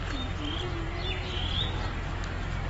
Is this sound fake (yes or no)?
no